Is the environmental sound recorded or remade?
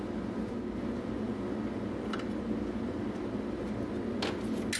recorded